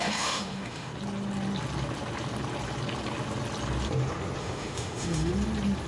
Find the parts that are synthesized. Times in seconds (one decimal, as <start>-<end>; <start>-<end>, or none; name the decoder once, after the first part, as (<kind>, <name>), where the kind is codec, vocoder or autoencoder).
0.0-0.9 (autoencoder, DAC-VAE); 4.4-5.3